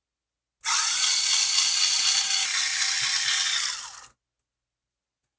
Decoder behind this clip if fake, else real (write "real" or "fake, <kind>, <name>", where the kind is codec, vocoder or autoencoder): real